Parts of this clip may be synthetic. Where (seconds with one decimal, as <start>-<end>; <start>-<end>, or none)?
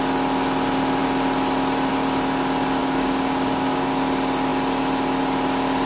2.8-3.9